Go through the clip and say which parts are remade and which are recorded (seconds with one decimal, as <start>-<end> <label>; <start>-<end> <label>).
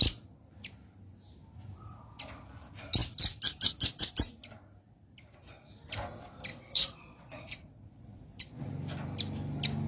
0.0-6.5 recorded; 6.5-8.7 remade; 8.7-9.9 recorded